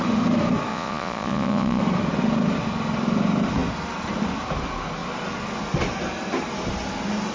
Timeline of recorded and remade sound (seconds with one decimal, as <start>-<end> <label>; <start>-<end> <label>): 0.0-0.7 recorded; 0.7-1.8 remade; 1.8-7.3 recorded